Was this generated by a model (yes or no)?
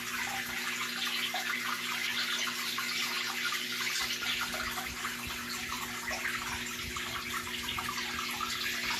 no